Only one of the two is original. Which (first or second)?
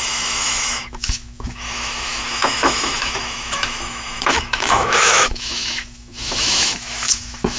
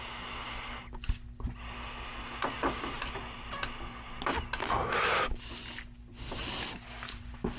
second